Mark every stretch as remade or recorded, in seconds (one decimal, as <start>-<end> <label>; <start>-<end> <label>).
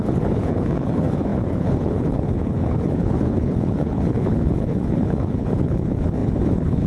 0.0-6.9 remade